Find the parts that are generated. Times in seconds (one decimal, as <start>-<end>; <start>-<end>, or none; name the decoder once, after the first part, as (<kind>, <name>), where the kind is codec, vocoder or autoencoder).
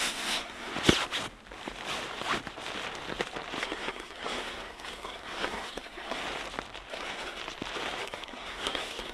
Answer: 0.0-0.7 (codec, SNAC); 3.6-6.2; 6.9-7.4; 8.0-9.1